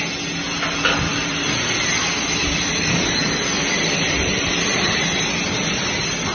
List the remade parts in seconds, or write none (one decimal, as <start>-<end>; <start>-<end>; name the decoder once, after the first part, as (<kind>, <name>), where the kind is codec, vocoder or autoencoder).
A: 1.1-4.9 (vocoder, BigVGAN v2)